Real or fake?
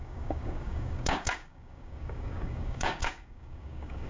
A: fake